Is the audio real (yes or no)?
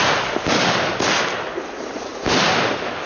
yes